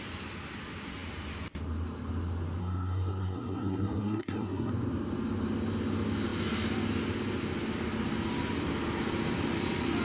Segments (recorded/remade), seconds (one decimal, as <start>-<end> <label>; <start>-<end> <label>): 0.0-2.6 recorded; 2.6-4.7 remade; 4.7-10.0 recorded